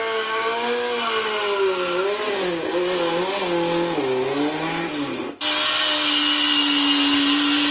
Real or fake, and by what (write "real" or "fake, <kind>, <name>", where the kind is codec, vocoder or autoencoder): real